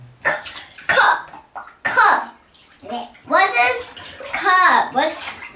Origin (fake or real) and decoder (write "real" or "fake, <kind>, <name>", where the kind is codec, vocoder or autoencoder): real